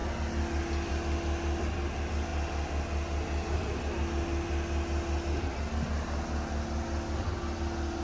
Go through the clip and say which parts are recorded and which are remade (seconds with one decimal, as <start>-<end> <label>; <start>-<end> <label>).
0.0-8.0 recorded